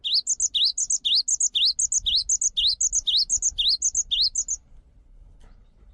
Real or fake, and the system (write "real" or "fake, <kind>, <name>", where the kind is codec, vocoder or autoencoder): real